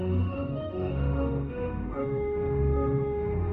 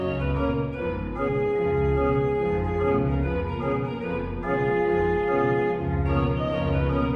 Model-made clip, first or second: first